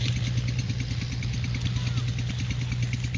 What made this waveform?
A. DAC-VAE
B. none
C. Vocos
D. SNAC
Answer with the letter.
B